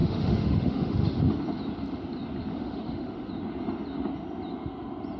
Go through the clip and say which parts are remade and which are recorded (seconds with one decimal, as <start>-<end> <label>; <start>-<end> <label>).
0.0-1.2 remade; 1.2-2.5 recorded; 2.5-3.3 remade; 3.3-5.2 recorded